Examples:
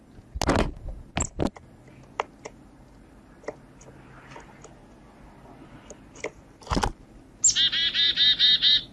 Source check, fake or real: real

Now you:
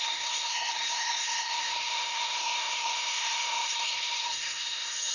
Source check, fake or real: fake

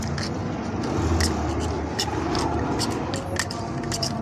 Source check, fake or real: real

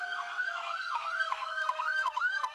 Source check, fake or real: fake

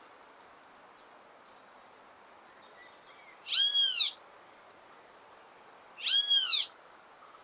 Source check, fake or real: real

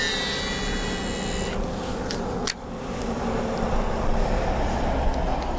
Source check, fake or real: real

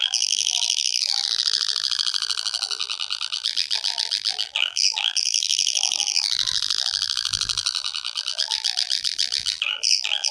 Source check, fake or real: fake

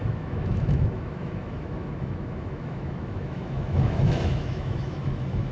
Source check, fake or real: fake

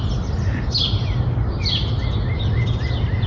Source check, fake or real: real